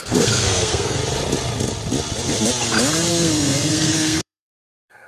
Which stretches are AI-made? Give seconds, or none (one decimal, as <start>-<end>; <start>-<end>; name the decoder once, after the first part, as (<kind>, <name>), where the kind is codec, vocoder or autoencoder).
0.0-1.0 (codec, SNAC); 3.1-5.1